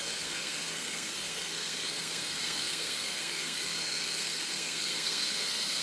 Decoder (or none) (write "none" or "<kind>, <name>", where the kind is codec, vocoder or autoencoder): codec, SNAC